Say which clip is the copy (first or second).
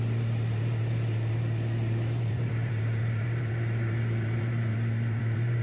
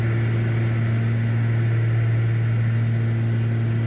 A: first